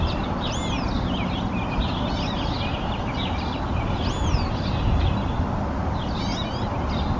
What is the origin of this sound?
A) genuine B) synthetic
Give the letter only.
A